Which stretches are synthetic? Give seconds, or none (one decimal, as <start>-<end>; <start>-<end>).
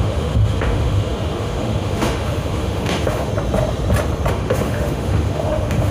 0.0-3.3; 4.3-5.9